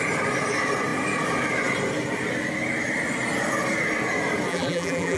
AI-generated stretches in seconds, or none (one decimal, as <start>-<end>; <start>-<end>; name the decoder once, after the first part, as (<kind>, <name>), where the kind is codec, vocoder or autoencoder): 4.5-5.2 (vocoder, BigVGAN v2)